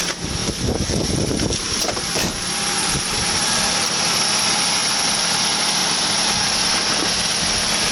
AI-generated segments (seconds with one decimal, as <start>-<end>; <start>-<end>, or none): 0.4-3.7

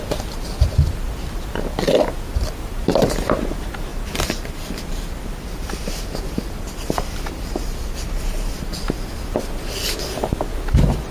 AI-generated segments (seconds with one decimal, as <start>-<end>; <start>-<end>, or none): 3.9-8.8

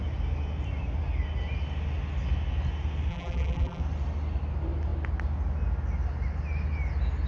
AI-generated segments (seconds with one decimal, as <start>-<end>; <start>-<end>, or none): 3.1-3.8

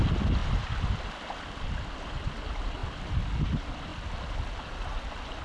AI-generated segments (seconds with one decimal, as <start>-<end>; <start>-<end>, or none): none

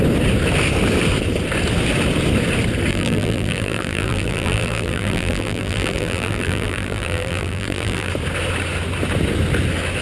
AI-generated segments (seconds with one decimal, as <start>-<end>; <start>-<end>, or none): 2.9-8.1

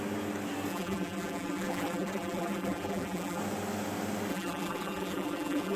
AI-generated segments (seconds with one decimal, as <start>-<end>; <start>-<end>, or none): 0.7-3.4; 4.3-5.8

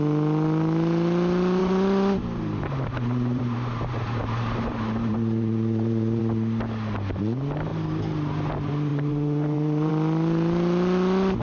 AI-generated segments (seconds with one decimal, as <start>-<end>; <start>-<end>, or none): 1.6-6.2; 8.9-9.9

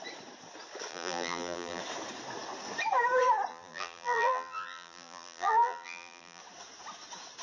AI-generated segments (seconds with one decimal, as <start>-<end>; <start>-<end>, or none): 0.9-1.8; 3.5-6.4